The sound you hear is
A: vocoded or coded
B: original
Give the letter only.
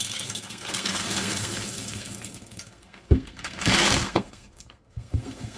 A